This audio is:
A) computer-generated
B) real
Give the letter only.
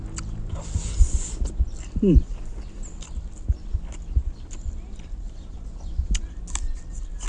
B